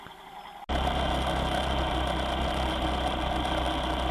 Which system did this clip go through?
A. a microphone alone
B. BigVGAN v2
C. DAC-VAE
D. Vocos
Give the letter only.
A